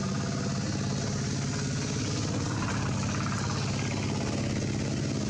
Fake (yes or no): no